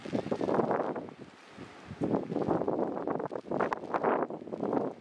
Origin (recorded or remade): recorded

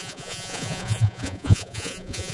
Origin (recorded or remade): remade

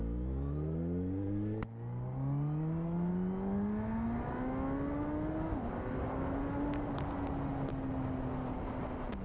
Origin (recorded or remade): recorded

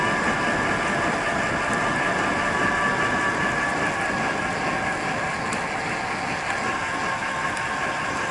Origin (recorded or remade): recorded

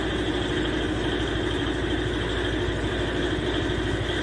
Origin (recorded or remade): recorded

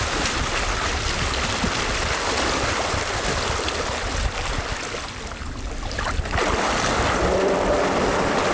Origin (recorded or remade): recorded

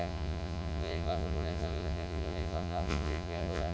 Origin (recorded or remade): remade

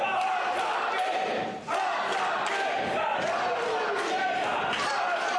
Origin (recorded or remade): recorded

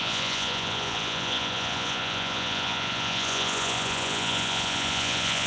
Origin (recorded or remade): remade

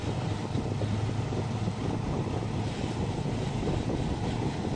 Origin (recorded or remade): recorded